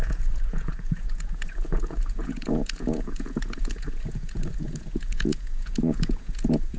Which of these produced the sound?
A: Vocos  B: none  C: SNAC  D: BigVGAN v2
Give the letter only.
A